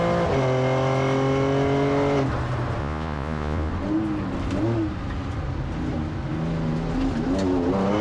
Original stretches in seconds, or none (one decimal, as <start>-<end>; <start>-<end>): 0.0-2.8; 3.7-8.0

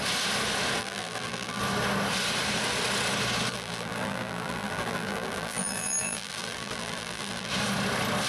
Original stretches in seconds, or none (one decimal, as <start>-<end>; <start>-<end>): 0.0-0.8; 1.6-3.5; 7.5-8.3

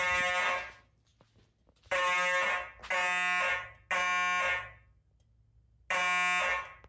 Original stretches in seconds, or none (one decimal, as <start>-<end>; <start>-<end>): 0.0-6.9

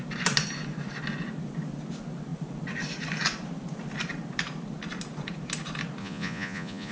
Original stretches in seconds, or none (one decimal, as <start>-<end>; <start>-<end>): 0.0-6.0

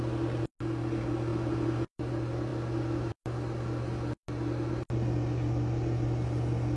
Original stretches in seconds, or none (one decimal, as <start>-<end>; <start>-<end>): 0.0-6.8